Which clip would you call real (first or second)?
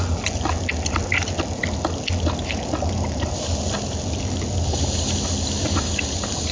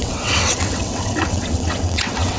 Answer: first